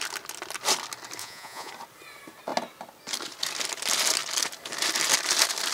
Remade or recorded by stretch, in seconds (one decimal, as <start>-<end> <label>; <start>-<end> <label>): 0.0-1.2 recorded; 1.2-1.7 remade; 1.7-5.7 recorded